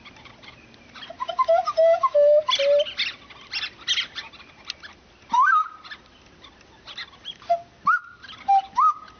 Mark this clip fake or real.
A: real